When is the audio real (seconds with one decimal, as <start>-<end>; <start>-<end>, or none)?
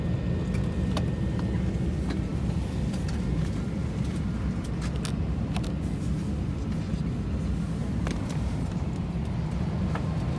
0.0-7.8; 8.8-10.4